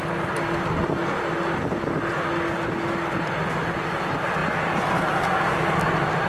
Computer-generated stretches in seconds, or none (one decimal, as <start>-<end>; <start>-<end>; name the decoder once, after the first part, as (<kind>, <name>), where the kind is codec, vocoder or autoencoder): none